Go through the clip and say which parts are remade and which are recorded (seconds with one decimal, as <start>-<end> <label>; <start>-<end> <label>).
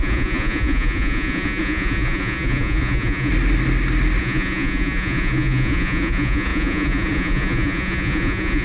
0.0-3.3 remade; 3.3-4.2 recorded; 4.2-8.6 remade